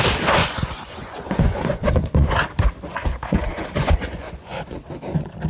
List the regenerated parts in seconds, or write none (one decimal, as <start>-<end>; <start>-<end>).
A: 0.4-2.3; 2.9-4.8